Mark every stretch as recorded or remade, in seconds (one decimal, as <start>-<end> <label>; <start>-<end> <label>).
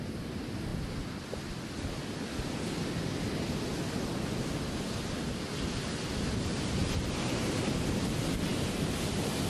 0.0-6.8 recorded; 6.8-7.5 remade; 7.5-9.5 recorded